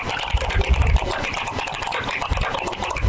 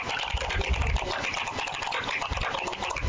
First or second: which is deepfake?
first